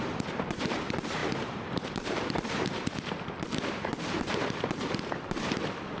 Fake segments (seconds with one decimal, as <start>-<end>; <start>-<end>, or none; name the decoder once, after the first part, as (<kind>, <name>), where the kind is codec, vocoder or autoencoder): 0.0-6.0 (vocoder, BigVGAN v2)